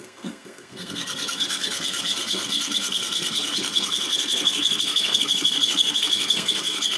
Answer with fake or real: fake